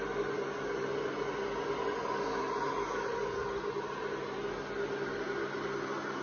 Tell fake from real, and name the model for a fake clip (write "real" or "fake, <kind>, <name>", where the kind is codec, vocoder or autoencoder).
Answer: real